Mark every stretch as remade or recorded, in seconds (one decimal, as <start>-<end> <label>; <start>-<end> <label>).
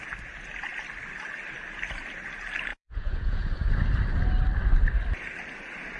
0.0-2.7 recorded; 2.7-3.7 remade; 3.7-6.0 recorded